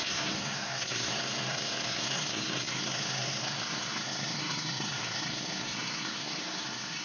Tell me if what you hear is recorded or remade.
remade